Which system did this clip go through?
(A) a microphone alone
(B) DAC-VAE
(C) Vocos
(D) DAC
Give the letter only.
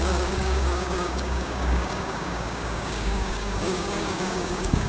D